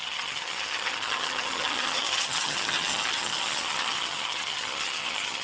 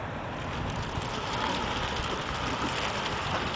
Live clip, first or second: second